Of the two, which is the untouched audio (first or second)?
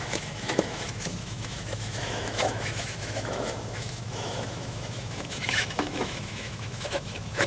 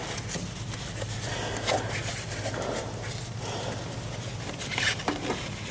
second